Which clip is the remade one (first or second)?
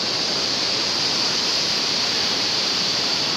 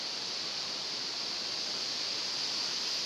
first